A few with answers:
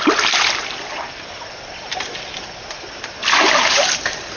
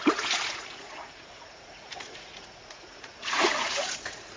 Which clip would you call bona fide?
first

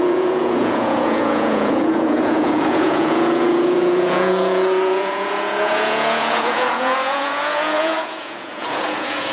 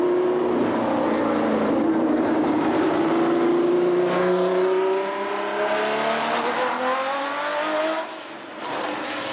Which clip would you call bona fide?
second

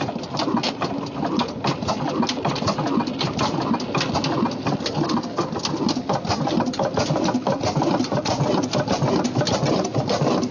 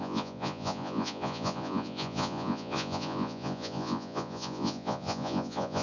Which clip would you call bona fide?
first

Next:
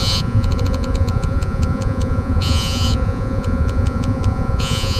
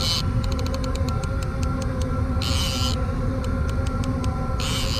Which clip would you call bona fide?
second